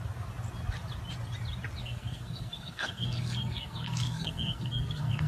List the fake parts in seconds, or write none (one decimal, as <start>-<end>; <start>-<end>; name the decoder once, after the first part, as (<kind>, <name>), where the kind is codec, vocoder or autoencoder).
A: 1.8-5.3 (codec, SNAC)